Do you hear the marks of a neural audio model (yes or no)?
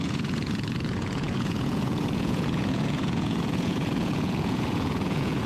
yes